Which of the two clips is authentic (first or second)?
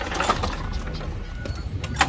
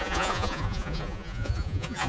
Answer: first